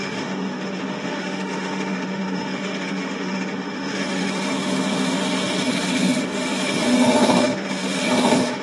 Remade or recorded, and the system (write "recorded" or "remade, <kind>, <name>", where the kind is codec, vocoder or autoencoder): remade, autoencoder, DAC-VAE